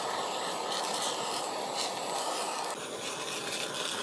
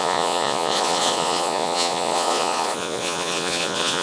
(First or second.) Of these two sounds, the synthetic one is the second